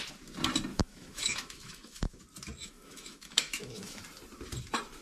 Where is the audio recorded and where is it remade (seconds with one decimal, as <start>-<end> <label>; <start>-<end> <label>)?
0.0-0.7 recorded; 0.7-2.2 remade; 2.2-2.6 recorded; 2.6-4.0 remade; 4.0-5.0 recorded